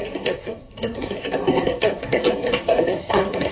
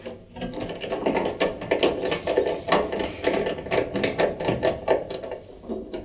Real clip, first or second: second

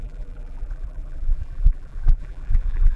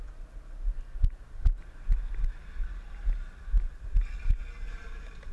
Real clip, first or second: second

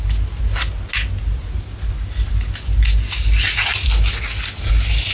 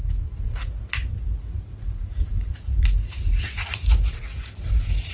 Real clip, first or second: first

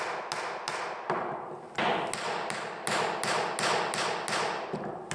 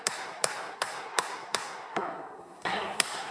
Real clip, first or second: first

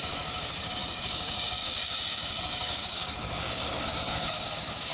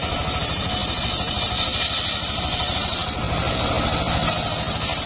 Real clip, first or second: second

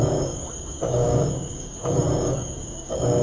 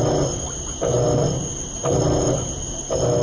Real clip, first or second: second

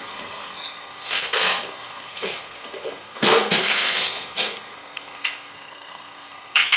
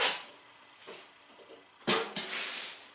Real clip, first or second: second